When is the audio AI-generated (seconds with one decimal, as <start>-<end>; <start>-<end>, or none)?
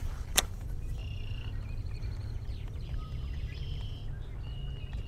0.0-4.0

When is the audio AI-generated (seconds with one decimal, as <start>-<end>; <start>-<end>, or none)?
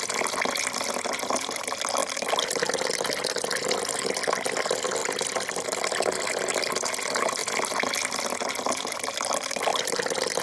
5.0-6.3; 9.7-10.4